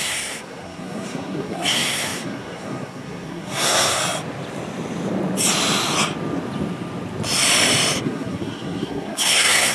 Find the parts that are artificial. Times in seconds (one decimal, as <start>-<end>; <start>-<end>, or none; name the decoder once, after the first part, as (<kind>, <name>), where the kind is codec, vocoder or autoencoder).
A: 0.0-4.0 (codec, SNAC); 8.0-9.7